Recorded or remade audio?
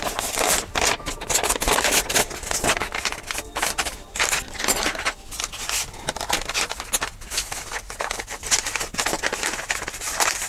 recorded